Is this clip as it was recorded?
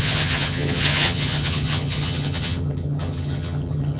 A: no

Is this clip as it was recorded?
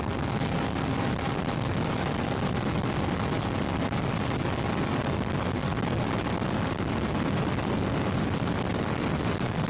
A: yes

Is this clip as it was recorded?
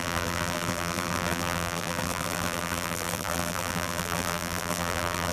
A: no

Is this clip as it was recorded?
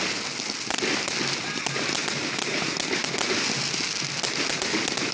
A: yes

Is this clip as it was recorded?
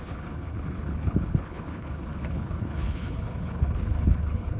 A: no